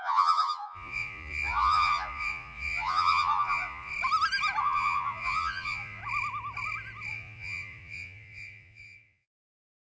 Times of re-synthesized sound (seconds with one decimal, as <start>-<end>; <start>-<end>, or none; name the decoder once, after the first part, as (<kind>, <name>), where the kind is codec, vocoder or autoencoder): 0.0-3.9 (vocoder, Vocos); 4.6-6.0; 7.1-10.0